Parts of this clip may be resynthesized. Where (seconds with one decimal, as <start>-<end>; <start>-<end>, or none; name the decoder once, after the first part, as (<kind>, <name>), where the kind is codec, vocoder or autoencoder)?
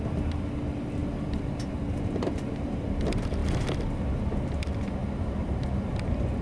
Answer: 1.0-2.9 (vocoder, BigVGAN v2)